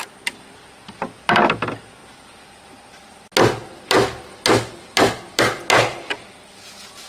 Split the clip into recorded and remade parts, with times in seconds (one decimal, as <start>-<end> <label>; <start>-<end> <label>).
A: 0.0-7.1 recorded

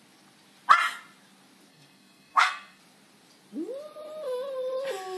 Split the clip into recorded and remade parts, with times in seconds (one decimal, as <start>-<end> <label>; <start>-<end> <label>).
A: 0.0-1.7 recorded; 1.7-2.8 remade; 2.8-5.2 recorded

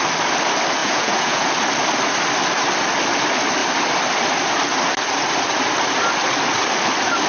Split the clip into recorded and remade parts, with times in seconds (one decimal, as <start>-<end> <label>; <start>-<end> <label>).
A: 0.0-0.8 recorded; 0.8-1.5 remade; 1.5-7.3 recorded

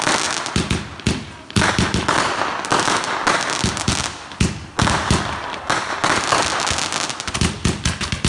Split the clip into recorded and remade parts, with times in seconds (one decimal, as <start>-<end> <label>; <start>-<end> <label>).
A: 0.0-8.3 recorded

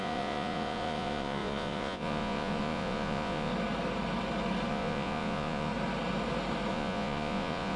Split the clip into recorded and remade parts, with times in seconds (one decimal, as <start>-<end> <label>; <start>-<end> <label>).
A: 0.0-3.5 remade; 3.5-4.7 recorded; 4.7-5.7 remade; 5.7-6.7 recorded; 6.7-7.8 remade

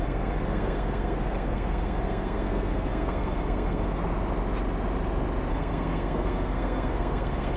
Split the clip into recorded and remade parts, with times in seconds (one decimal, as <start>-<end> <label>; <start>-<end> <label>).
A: 0.0-4.0 remade; 4.0-5.5 recorded; 5.5-7.6 remade

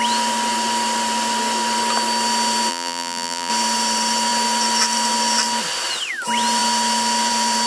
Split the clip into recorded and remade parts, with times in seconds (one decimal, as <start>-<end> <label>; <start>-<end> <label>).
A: 0.0-2.7 recorded; 2.7-3.5 remade; 3.5-7.7 recorded